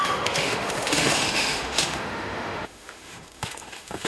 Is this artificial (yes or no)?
yes